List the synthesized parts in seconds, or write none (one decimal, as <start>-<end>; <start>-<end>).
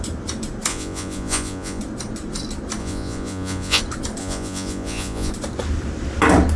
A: 0.7-1.8; 2.8-3.8; 4.2-5.3